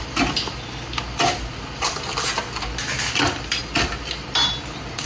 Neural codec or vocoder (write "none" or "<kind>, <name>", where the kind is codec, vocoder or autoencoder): none